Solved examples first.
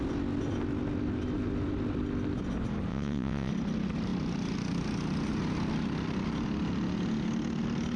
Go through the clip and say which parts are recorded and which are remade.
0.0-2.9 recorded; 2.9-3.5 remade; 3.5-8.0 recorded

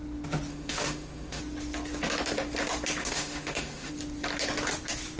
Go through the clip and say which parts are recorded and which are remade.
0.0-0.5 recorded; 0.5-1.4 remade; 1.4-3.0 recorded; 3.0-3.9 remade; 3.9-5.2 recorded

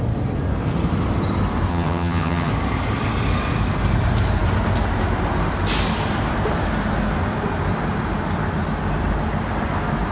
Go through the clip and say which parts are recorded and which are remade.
0.0-1.7 recorded; 1.7-2.5 remade; 2.5-10.1 recorded

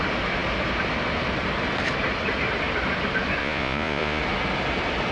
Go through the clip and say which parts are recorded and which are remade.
0.0-3.4 recorded; 3.4-4.2 remade; 4.2-5.1 recorded